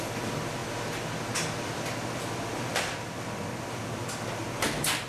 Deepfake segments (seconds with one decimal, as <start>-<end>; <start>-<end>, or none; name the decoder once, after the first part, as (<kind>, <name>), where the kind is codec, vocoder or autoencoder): none